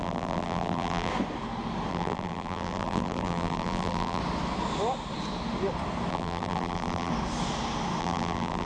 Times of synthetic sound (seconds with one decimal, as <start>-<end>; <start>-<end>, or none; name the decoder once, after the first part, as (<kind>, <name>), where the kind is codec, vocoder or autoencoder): 0.0-1.1 (vocoder, BigVGAN v2); 1.9-4.2; 6.1-7.1; 8.0-8.7